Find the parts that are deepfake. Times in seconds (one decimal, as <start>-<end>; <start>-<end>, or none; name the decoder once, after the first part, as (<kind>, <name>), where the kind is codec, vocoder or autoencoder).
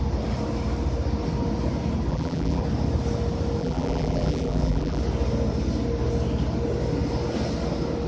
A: 2.1-2.6 (vocoder, BigVGAN v2); 3.6-5.0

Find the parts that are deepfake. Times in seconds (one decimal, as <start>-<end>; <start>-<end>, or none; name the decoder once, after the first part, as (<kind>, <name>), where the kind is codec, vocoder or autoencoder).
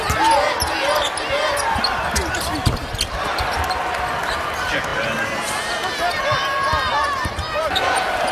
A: none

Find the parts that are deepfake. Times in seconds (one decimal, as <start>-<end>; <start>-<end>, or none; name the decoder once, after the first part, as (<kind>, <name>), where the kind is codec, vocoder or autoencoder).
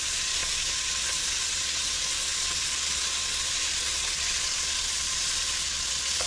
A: 0.0-6.3 (vocoder, Vocos)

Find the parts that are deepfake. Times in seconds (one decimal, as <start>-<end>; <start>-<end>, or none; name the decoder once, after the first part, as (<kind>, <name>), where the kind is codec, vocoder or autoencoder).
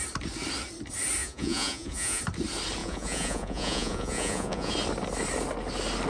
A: 1.2-2.2 (vocoder, Vocos); 2.8-4.7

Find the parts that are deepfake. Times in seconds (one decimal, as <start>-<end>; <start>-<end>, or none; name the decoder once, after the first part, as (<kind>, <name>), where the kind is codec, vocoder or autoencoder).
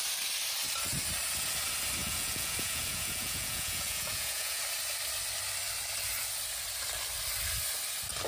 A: 2.0-4.6 (vocoder, Vocos)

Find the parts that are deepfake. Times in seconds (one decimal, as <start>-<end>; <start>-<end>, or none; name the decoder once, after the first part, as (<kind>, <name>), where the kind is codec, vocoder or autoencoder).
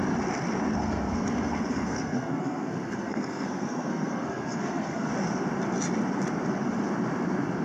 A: 0.8-5.1 (codec, SNAC)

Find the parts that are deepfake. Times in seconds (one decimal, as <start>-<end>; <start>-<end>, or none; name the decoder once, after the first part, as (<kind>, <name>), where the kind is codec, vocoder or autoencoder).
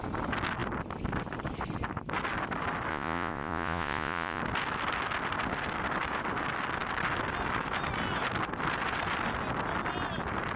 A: 2.9-4.4 (vocoder, Vocos)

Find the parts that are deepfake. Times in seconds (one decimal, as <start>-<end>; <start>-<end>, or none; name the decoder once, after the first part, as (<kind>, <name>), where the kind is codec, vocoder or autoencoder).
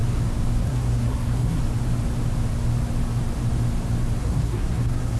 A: 0.6-1.6 (codec, SNAC); 4.2-5.2